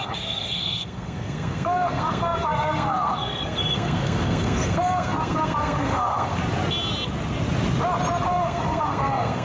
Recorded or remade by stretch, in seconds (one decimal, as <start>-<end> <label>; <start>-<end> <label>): 0.0-6.4 remade; 6.4-8.3 recorded; 8.3-9.4 remade